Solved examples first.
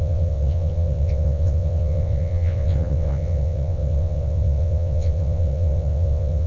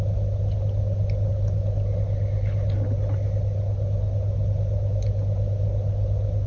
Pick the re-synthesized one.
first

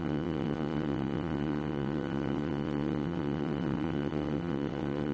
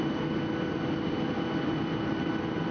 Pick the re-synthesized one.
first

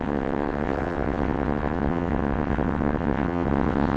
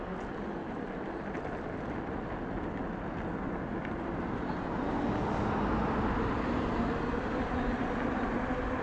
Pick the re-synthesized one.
first